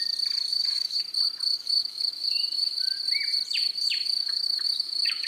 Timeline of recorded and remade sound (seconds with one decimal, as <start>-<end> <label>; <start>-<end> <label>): 0.0-0.5 recorded; 0.5-1.0 remade; 1.0-1.6 recorded; 1.6-2.8 remade; 2.8-4.2 recorded; 4.2-5.3 remade